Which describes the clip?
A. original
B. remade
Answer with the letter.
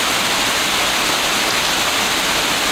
A